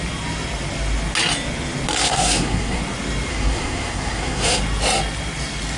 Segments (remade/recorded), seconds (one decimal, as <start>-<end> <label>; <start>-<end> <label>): 0.0-2.0 recorded; 2.0-2.8 remade; 2.8-3.3 recorded; 3.3-4.6 remade; 4.6-5.8 recorded